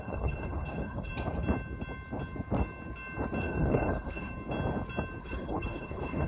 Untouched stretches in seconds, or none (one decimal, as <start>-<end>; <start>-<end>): 1.1-3.4; 4.3-5.2